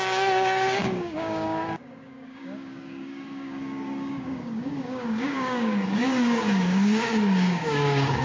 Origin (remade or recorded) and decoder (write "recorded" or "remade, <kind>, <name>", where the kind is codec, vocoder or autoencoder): remade, codec, DAC